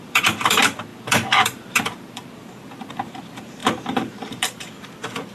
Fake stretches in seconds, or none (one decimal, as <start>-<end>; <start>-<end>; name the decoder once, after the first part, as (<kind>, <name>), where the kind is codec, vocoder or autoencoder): 0.0-5.3 (vocoder, BigVGAN v2)